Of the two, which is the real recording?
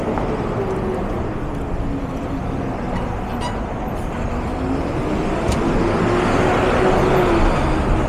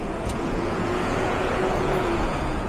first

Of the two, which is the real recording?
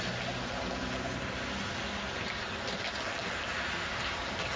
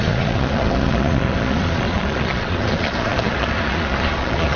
first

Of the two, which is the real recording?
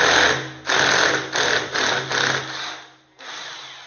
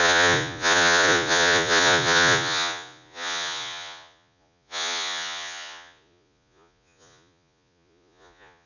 first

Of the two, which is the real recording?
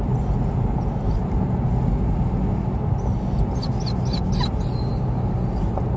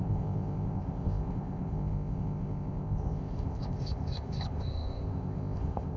first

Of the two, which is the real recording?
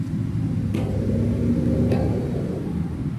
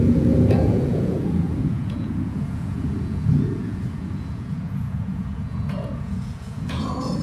first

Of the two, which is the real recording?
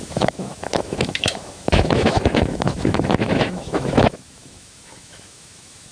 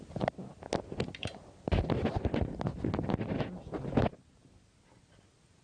second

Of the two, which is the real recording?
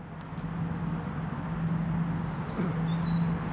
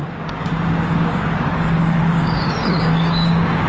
first